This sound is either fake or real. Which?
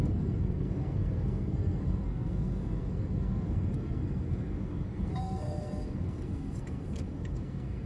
fake